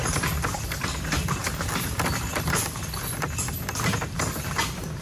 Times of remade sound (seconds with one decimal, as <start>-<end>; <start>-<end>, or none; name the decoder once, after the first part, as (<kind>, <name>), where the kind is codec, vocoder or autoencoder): none